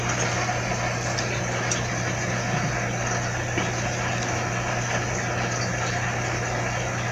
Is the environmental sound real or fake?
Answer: real